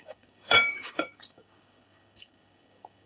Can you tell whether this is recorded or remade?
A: remade